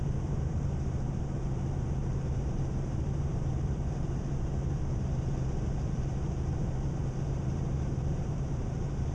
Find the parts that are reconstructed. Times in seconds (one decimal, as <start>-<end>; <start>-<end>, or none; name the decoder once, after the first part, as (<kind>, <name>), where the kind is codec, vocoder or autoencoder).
0.0-9.1 (vocoder, BigVGAN v2)

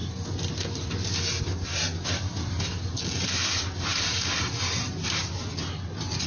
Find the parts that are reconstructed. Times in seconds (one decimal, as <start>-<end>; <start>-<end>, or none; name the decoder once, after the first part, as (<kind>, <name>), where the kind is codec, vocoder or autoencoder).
0.0-2.9 (vocoder, BigVGAN v2); 3.9-4.8

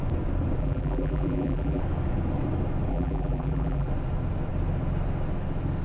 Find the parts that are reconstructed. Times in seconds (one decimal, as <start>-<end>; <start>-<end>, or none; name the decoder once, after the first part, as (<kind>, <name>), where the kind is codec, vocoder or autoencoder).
0.6-1.8 (vocoder, BigVGAN v2); 2.9-3.9

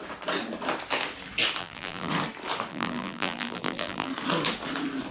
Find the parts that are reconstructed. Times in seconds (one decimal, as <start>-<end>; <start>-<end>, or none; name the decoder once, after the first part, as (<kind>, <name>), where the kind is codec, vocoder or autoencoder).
1.6-2.1 (vocoder, BigVGAN v2); 2.7-4.1

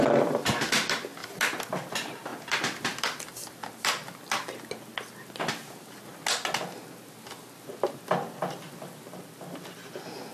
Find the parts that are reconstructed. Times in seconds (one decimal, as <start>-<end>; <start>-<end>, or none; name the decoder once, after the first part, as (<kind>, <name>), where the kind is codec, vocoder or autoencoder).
1.2-1.9 (vocoder, BigVGAN v2); 2.3-5.5